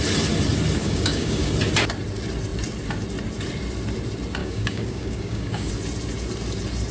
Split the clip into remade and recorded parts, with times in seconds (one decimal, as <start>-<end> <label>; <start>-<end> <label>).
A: 0.0-0.8 recorded; 0.8-1.5 remade; 1.5-4.4 recorded; 4.4-5.7 remade; 5.7-6.9 recorded